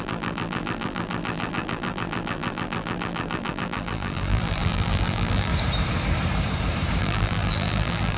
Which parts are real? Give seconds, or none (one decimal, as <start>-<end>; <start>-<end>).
5.5-7.0